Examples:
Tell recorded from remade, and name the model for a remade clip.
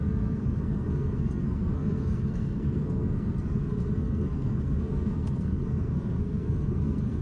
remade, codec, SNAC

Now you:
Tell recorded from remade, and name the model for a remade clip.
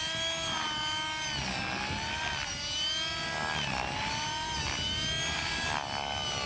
recorded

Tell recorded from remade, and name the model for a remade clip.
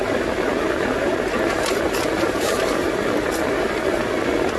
recorded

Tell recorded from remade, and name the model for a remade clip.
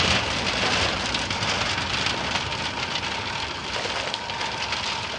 recorded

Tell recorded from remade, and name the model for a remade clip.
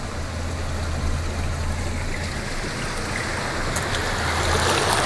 recorded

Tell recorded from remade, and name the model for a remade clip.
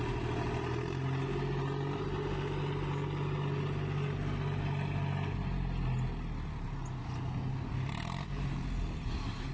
recorded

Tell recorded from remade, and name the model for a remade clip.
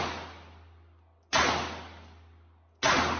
recorded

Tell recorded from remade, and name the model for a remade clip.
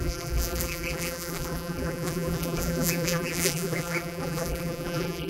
remade, vocoder, BigVGAN v2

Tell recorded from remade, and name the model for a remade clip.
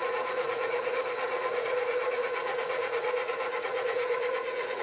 remade, vocoder, Vocos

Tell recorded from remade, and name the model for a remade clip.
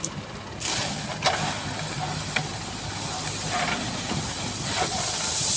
recorded